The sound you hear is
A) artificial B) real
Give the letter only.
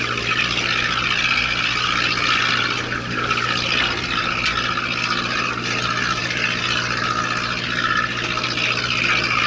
B